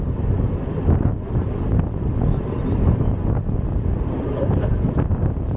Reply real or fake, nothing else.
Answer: real